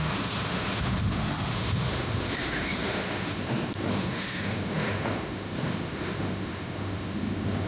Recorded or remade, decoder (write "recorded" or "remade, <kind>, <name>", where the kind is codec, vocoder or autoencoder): remade, autoencoder, DAC-VAE